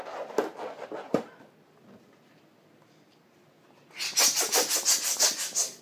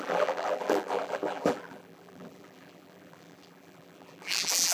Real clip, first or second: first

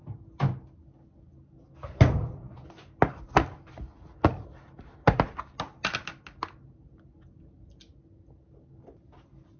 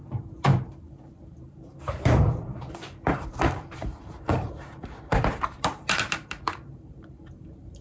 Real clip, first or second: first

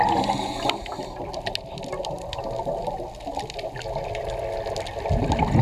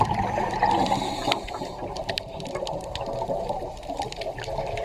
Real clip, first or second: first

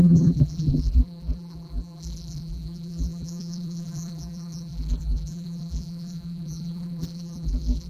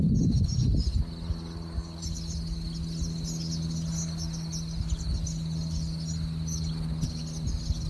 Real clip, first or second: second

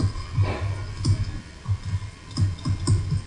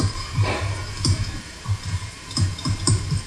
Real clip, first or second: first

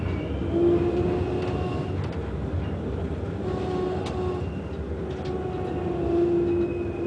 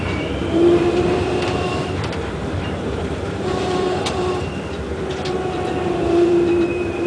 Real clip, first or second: first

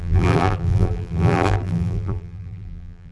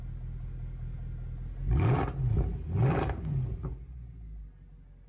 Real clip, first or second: second